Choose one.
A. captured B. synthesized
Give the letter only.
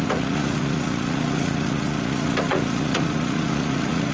B